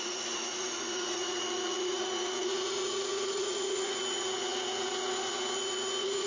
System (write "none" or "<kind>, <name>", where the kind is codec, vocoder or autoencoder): vocoder, Vocos